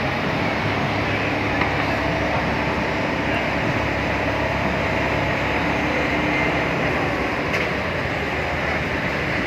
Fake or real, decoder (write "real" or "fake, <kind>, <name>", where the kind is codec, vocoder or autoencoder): real